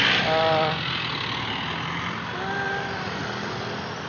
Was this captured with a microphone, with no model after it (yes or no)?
yes